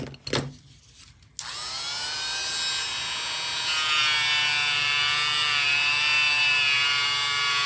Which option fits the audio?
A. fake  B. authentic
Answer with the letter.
B